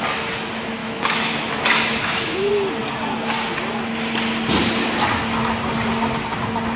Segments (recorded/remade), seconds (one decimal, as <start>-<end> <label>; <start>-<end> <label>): 0.0-0.8 recorded; 0.8-1.5 remade; 1.5-1.9 recorded; 1.9-2.5 remade; 2.5-6.8 recorded